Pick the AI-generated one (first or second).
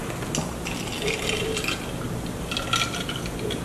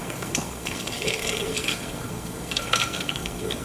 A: second